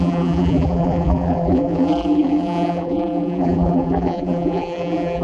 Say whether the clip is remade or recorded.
remade